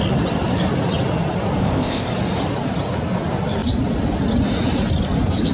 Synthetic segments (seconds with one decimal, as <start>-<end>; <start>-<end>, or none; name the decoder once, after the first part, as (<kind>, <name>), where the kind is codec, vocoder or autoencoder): 1.6-2.1 (codec, ZipCodec)